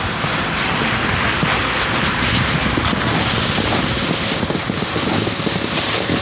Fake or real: real